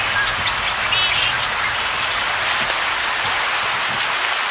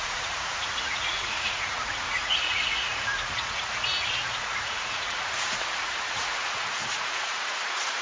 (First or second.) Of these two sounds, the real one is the first